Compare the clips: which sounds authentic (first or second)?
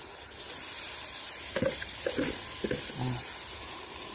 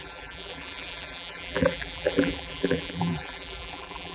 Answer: first